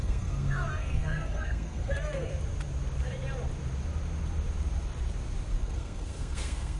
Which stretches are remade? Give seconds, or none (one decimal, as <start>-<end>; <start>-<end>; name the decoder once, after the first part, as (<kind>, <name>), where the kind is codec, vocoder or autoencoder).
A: 0.0-2.3 (codec, SNAC); 5.5-6.8